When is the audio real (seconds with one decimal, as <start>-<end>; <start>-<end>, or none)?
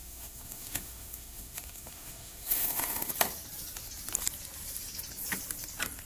3.1-6.1